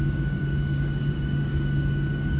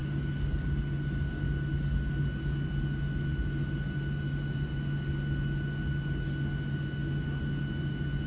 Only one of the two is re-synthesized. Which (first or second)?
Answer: first